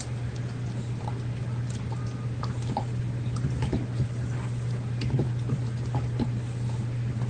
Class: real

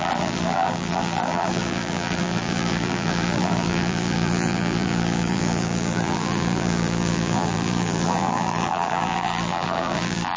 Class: fake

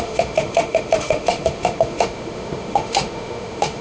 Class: fake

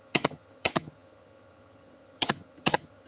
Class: fake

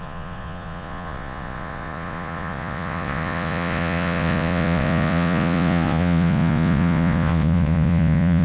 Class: fake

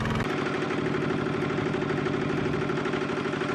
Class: real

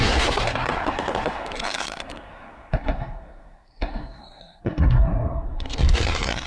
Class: fake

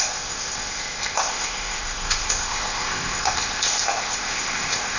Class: fake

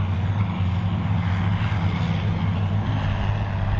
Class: real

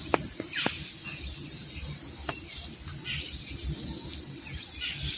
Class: real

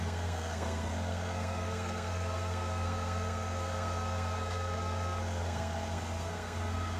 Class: fake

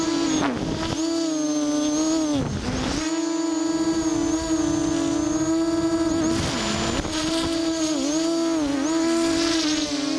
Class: real